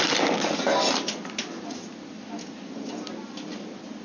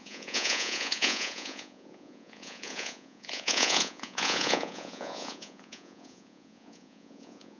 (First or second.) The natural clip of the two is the first